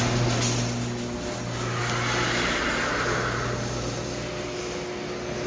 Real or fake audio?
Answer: real